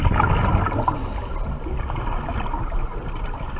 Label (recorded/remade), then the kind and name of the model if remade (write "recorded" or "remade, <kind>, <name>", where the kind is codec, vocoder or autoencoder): recorded